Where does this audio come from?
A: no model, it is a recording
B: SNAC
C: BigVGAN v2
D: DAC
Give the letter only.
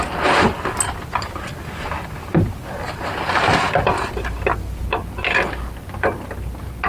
A